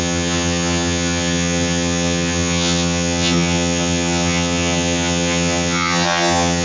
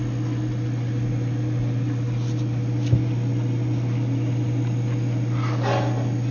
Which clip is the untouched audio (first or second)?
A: second